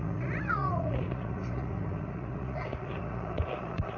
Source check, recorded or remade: remade